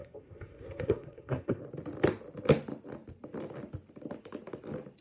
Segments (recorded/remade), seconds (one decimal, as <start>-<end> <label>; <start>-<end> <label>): 0.0-1.6 remade; 1.6-5.0 recorded